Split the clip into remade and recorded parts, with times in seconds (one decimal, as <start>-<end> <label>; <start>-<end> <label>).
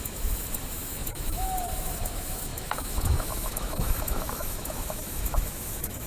0.0-6.1 remade